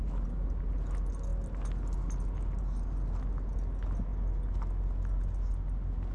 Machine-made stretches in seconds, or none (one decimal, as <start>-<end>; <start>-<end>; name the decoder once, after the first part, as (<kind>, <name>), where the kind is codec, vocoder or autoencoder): none